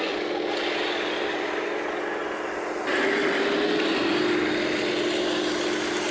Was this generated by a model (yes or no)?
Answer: no